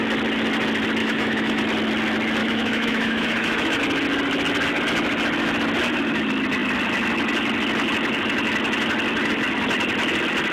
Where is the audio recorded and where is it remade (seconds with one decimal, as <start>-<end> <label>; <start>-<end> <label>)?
0.0-1.0 recorded; 1.0-1.6 remade; 1.6-2.4 recorded; 2.4-3.8 remade; 3.8-10.5 recorded